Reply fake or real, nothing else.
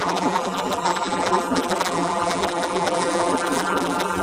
fake